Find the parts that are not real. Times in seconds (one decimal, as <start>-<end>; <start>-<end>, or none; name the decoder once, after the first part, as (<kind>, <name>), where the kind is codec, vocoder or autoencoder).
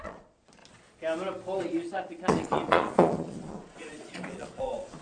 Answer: 0.0-0.6 (vocoder, Vocos); 1.6-5.0